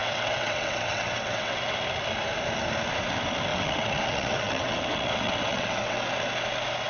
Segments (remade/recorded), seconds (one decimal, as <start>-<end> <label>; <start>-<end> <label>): 0.0-1.6 remade; 1.6-3.5 recorded; 3.5-6.0 remade; 6.0-6.9 recorded